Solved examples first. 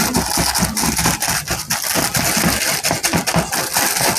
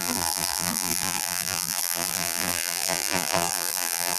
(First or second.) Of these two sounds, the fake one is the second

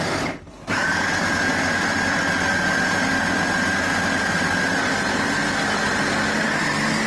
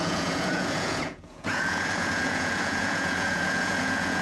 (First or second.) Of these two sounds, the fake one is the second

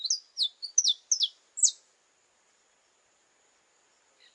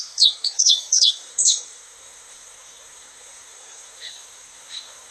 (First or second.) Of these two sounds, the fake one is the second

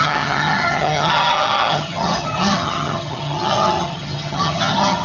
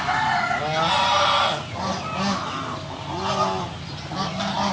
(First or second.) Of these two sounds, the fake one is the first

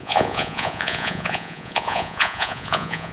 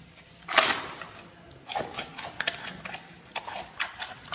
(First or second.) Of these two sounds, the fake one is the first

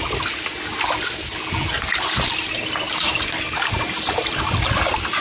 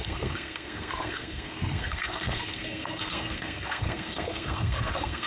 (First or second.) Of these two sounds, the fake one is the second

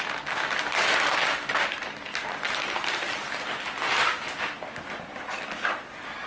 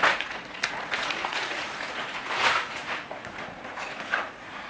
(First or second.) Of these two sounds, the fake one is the second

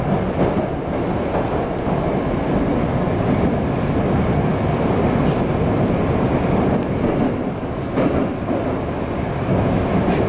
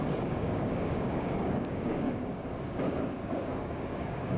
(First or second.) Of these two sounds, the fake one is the second